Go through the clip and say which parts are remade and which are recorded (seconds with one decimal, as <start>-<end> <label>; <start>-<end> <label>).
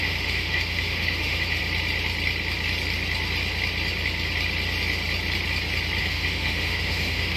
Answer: 0.0-1.6 remade; 1.6-6.0 recorded; 6.0-7.4 remade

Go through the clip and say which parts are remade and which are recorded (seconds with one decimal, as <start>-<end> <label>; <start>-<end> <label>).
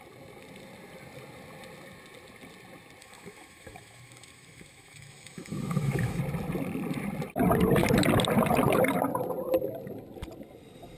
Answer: 0.0-3.0 recorded; 3.0-6.2 remade; 6.2-11.0 recorded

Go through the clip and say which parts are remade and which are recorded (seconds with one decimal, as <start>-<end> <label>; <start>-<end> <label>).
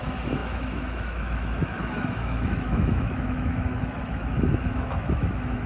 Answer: 0.0-5.7 remade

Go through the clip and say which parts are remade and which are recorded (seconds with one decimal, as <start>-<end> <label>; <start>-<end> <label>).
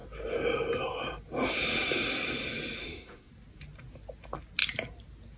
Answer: 0.0-2.8 recorded; 2.8-3.3 remade; 3.3-5.4 recorded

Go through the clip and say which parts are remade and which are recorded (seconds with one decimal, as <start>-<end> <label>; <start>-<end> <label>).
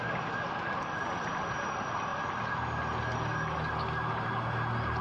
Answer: 0.0-5.0 recorded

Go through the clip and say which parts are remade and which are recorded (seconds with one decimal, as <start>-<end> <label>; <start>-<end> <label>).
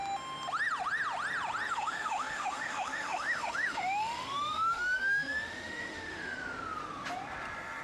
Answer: 0.0-1.7 recorded; 1.7-6.4 remade; 6.4-7.8 recorded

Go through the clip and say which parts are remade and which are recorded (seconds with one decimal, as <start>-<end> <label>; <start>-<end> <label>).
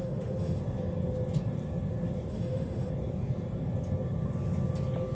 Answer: 0.0-0.6 remade; 0.6-2.3 recorded; 2.3-2.9 remade; 2.9-5.1 recorded